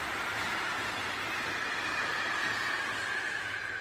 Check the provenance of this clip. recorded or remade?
recorded